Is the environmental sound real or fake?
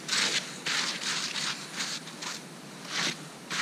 real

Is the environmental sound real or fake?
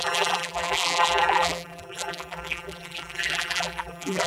fake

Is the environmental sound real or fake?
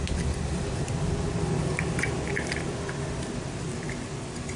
real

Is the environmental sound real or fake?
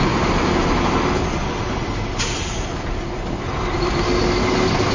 real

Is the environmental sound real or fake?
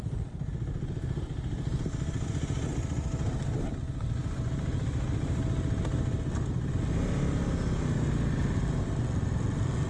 real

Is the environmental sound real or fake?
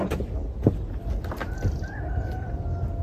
real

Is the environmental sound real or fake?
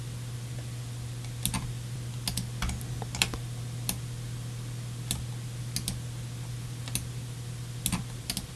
real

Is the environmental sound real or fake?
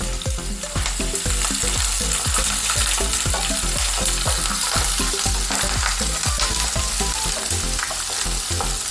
real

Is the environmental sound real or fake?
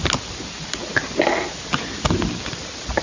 real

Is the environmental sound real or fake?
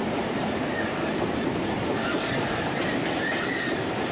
fake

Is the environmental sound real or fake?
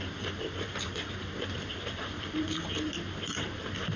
fake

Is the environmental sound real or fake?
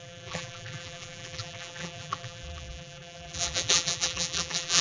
fake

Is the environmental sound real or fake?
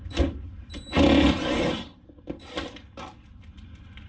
fake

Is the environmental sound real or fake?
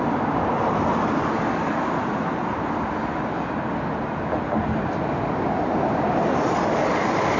real